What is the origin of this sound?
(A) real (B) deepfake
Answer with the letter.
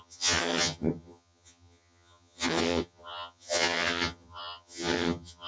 B